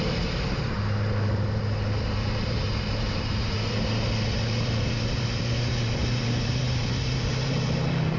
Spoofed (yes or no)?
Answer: yes